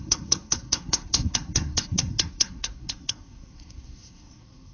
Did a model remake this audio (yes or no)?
yes